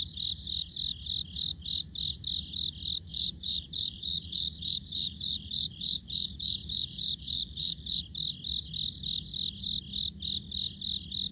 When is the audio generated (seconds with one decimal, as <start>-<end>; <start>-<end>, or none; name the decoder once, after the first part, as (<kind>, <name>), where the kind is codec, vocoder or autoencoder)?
3.1-8.0 (vocoder, BigVGAN v2)